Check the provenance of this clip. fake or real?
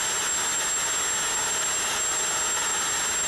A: real